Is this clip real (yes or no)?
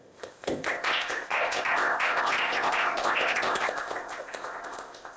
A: no